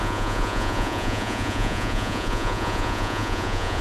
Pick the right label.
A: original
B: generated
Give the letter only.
B